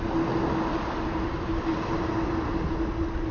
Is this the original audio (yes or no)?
yes